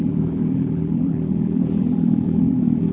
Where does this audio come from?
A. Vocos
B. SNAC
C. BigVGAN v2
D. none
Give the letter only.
C